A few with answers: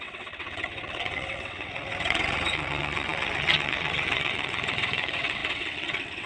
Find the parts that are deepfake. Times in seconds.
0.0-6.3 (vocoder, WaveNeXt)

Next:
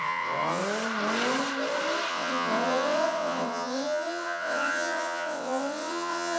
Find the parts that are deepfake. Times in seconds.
0.0-0.6 (vocoder, WaveNeXt); 2.1-6.4